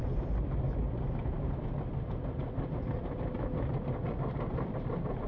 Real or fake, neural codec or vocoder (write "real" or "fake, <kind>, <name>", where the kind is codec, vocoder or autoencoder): real